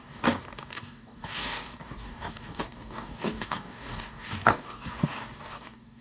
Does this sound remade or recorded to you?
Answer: remade